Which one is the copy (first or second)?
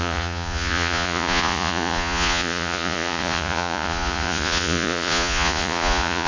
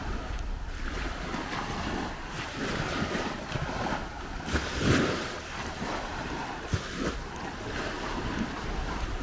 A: first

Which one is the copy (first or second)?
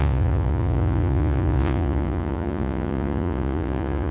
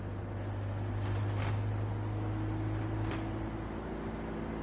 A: first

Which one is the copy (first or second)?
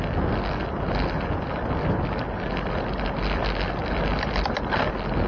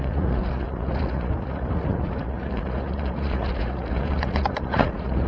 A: second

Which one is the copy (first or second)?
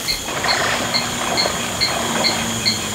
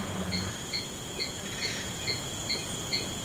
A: second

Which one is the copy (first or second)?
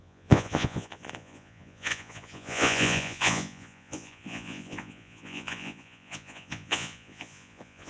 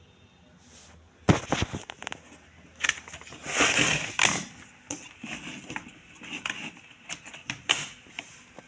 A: first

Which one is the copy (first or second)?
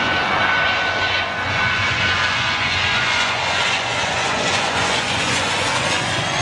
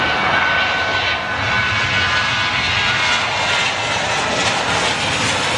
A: first